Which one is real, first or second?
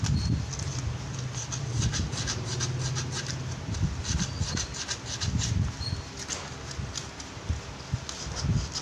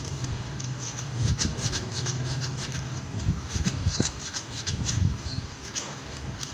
first